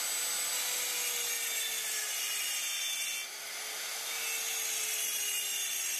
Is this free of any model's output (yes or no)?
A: yes